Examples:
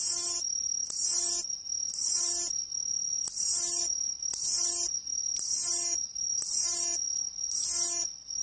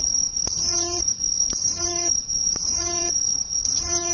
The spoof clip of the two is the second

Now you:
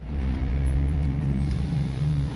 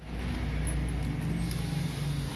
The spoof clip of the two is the first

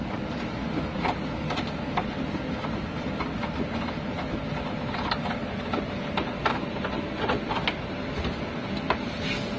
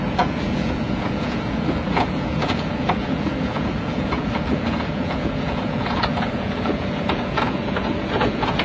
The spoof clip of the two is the second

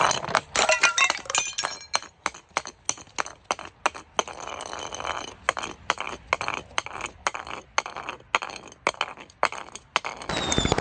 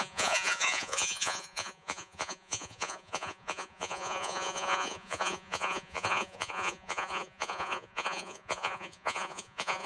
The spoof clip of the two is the second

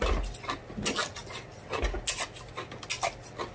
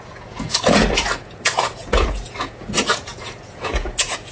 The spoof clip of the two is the second